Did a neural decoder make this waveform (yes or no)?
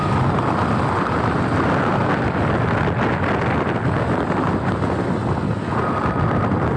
no